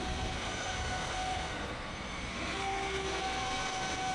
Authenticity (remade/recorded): remade